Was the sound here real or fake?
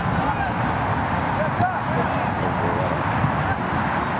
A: real